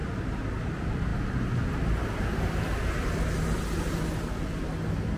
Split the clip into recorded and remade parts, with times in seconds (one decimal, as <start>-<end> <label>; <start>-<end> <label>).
0.0-5.2 recorded

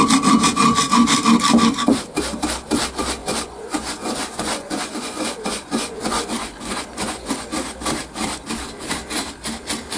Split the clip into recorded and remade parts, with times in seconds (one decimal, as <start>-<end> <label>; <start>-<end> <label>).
0.0-3.2 recorded; 3.2-7.5 remade; 7.5-10.0 recorded

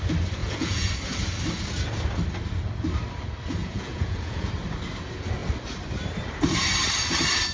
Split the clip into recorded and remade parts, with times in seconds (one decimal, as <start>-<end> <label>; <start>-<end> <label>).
0.0-0.4 recorded; 0.4-0.9 remade; 0.9-3.6 recorded; 3.6-4.5 remade; 4.5-7.5 recorded

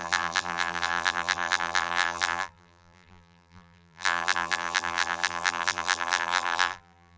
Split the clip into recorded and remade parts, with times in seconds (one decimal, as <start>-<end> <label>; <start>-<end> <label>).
0.0-7.2 remade

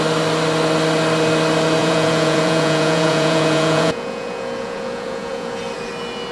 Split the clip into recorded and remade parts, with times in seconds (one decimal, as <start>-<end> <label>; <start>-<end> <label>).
0.0-1.8 recorded; 1.8-5.6 remade; 5.6-6.3 recorded

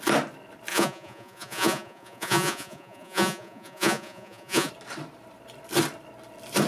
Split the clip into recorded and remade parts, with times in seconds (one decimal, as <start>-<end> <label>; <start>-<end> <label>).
0.0-0.7 recorded; 0.7-4.7 remade; 4.7-6.7 recorded